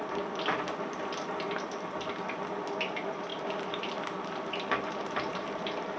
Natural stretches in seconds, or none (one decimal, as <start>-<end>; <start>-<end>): 0.0-3.3; 4.5-5.0